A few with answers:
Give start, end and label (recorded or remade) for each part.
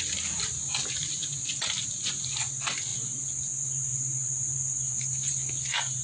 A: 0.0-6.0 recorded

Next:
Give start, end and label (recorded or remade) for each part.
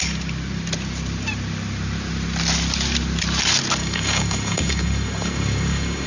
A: 0.0-3.8 recorded; 3.8-6.1 remade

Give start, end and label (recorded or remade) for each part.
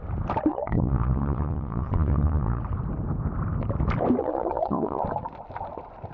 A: 0.0-0.5 recorded; 0.5-2.6 remade; 2.6-4.2 recorded; 4.2-5.0 remade; 5.0-6.1 recorded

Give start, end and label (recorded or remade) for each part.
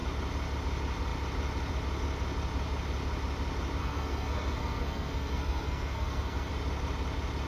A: 0.0-3.8 recorded; 3.8-6.5 remade; 6.5-7.5 recorded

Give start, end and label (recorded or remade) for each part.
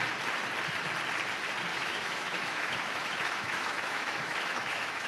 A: 0.0-1.7 recorded; 1.7-5.1 remade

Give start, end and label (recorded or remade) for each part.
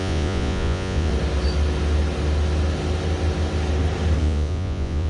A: 0.0-1.1 remade; 1.1-4.2 recorded; 4.2-5.1 remade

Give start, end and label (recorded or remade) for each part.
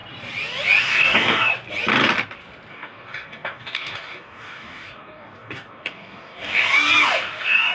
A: 0.0-0.8 recorded; 0.8-1.5 remade; 1.5-2.7 recorded; 2.7-7.7 remade